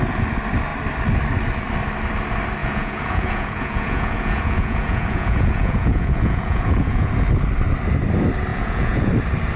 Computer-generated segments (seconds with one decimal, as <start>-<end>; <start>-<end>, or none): 2.6-7.1; 8.5-9.1